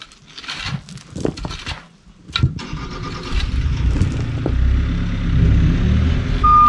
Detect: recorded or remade recorded